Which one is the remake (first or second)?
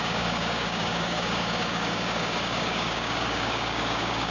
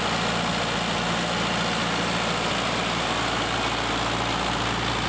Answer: first